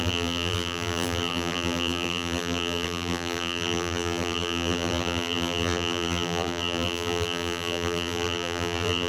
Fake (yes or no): yes